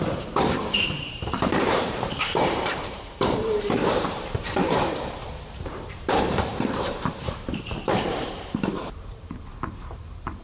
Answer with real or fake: fake